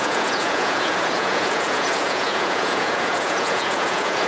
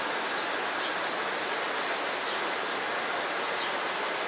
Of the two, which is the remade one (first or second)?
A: first